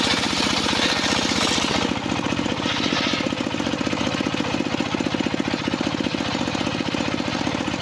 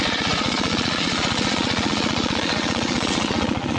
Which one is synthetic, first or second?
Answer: second